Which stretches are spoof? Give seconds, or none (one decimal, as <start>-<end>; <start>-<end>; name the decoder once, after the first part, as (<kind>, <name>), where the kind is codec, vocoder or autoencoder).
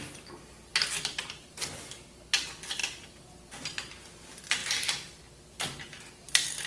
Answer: none